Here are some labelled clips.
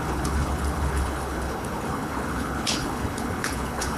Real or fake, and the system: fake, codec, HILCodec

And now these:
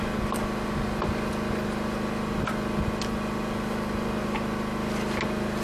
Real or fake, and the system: real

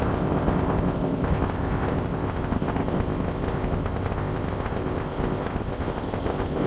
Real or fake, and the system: fake, codec, ZipCodec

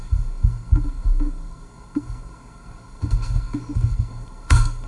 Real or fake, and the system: fake, codec, SNAC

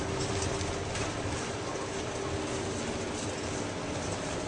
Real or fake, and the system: real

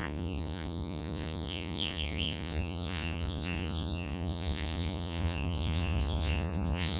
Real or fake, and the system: fake, vocoder, Vocos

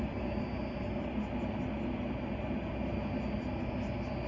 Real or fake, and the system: real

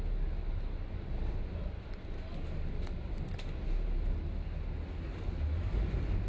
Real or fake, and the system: real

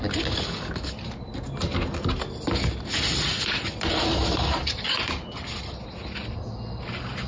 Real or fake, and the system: real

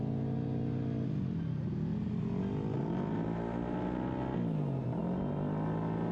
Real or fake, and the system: real